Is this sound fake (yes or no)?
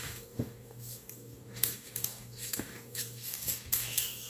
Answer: yes